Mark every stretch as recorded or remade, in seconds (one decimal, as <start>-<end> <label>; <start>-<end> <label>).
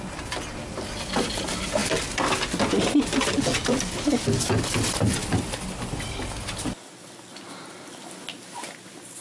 0.0-9.2 recorded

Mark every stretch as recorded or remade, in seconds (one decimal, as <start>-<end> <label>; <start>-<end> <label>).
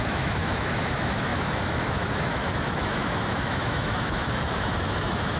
0.0-5.4 remade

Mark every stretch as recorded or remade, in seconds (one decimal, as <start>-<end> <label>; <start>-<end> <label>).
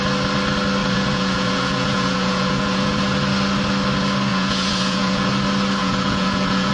0.0-0.8 recorded; 0.8-3.0 remade; 3.0-4.3 recorded; 4.3-5.3 remade; 5.3-5.8 recorded; 5.8-6.7 remade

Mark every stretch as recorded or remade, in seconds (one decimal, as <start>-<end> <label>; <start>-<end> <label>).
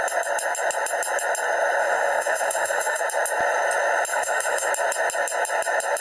0.0-1.8 recorded; 1.8-3.0 remade; 3.0-4.1 recorded; 4.1-4.7 remade; 4.7-6.0 recorded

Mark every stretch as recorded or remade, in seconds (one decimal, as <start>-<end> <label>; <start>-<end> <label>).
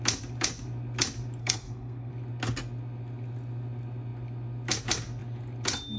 0.0-1.4 recorded; 1.4-2.1 remade; 2.1-6.0 recorded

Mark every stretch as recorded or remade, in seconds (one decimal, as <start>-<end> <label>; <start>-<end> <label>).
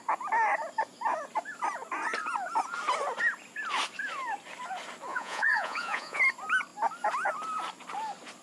0.0-5.1 recorded; 5.1-6.2 remade; 6.2-8.4 recorded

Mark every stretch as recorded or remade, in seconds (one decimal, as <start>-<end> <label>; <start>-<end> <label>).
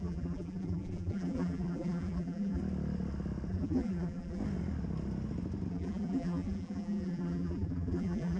0.0-2.6 remade; 2.6-3.5 recorded; 3.5-4.4 remade; 4.4-5.7 recorded; 5.7-8.4 remade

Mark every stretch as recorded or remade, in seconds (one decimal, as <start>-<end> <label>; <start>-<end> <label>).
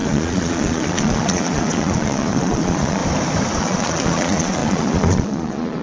0.0-3.0 remade; 3.0-3.6 recorded; 3.6-5.8 remade